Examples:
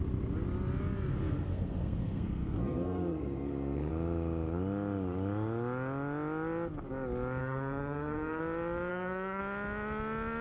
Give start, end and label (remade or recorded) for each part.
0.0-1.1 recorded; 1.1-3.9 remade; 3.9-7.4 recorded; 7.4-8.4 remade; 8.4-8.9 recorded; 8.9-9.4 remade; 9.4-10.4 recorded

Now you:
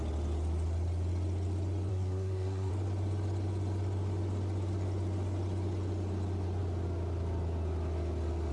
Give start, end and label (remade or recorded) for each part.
0.0-1.9 recorded; 1.9-2.7 remade; 2.7-8.5 recorded